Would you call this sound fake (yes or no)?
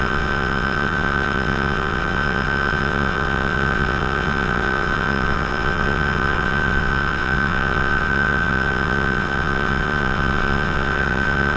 yes